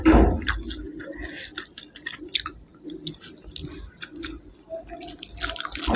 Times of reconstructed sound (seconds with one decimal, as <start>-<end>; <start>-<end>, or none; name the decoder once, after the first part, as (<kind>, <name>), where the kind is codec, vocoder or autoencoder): none

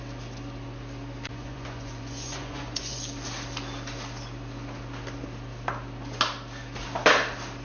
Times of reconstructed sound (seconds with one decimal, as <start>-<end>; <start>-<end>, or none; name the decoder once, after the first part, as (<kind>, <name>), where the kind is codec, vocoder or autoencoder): 1.3-3.0 (vocoder, Vocos)

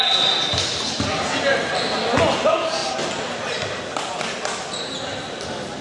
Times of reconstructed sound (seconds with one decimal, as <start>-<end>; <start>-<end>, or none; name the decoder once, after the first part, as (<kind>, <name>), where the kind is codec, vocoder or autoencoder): none